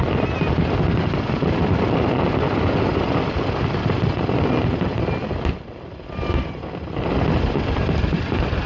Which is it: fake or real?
real